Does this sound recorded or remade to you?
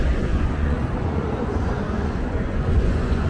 remade